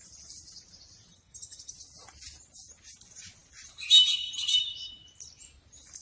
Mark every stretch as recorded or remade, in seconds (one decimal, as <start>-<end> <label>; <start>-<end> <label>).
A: 0.0-1.1 recorded; 1.1-1.7 remade; 1.7-6.0 recorded